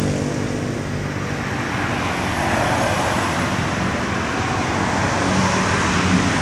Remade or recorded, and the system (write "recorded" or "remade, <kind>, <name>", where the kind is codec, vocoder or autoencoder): recorded